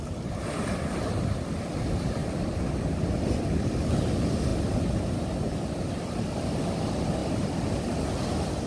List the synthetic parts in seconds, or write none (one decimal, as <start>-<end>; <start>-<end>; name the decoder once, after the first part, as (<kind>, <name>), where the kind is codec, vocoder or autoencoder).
2.2-4.0 (vocoder, BigVGAN v2)